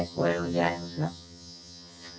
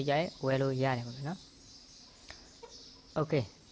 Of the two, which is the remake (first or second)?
first